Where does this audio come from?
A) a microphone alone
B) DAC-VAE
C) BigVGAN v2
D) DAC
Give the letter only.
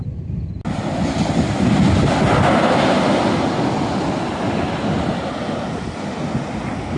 A